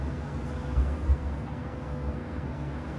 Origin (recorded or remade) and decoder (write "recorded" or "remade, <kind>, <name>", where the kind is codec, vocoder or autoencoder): remade, codec, SNAC